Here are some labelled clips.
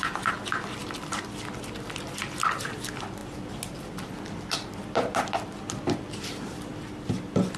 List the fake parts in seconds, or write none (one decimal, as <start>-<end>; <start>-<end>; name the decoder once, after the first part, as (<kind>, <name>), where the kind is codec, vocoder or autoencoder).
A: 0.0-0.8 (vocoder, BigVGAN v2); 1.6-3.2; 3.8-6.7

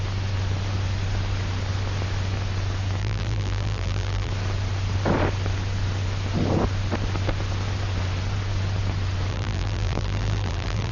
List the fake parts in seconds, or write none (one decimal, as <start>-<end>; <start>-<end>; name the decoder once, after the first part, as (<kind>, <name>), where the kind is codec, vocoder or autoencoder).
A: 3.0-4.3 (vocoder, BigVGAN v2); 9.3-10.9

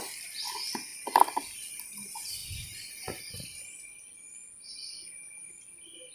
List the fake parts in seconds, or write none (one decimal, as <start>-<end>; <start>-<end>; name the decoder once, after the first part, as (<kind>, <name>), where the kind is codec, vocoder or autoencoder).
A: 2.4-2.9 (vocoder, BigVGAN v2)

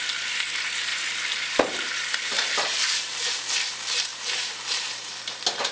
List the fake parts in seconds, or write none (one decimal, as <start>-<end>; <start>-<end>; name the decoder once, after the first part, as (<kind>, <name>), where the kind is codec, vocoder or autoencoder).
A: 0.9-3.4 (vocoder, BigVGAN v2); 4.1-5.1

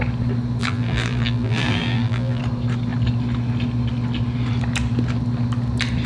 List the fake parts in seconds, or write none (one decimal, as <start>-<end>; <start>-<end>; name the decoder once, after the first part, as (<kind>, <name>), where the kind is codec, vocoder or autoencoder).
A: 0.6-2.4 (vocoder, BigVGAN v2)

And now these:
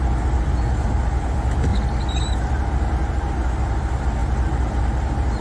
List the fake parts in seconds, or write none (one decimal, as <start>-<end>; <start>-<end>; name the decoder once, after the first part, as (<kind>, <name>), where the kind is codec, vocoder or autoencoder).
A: none

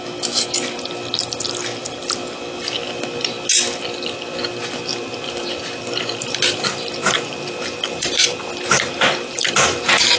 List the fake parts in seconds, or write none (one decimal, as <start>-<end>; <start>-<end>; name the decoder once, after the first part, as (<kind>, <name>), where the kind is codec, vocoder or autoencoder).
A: 4.9-10.2 (vocoder, BigVGAN v2)

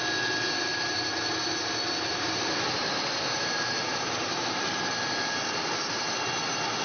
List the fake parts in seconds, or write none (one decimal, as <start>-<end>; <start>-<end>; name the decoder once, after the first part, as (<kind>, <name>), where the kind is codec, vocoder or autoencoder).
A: 0.7-1.5 (vocoder, BigVGAN v2); 2.1-5.3